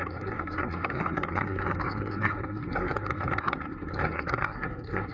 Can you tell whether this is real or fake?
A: fake